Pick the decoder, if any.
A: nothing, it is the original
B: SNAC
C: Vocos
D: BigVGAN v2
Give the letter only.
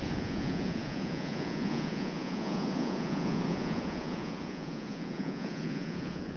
C